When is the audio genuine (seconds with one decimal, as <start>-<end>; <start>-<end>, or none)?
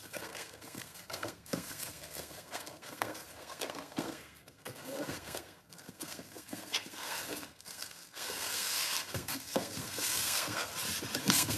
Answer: 10.7-11.2